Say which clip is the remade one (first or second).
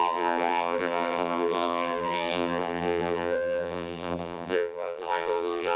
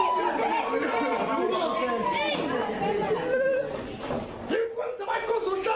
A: first